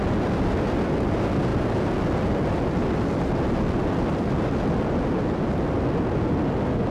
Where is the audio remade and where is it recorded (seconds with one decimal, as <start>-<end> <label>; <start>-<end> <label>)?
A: 0.0-6.9 recorded